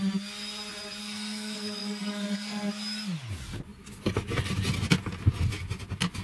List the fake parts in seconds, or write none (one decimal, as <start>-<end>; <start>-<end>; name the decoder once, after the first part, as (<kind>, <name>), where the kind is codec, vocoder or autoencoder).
1.0-2.7 (codec, SNAC)